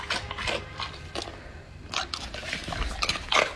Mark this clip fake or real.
real